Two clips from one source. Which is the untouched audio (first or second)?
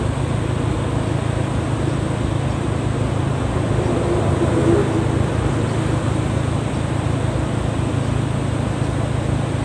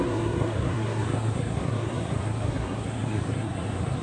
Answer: first